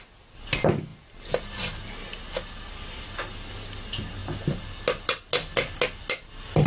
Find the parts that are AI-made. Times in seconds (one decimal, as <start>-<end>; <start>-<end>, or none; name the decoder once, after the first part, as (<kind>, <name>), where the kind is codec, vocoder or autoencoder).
none

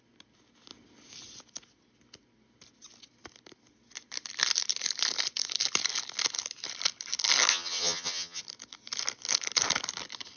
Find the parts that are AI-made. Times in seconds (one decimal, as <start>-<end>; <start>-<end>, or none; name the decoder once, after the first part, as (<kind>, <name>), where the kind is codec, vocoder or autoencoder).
7.5-8.4 (vocoder, HiFi-GAN)

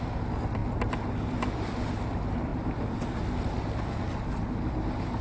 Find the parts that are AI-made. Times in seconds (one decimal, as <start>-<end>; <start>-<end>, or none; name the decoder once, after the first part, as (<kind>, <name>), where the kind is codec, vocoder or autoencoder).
none